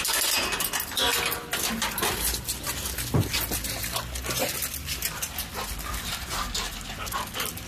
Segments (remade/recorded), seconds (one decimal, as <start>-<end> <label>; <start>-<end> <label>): 0.0-7.7 recorded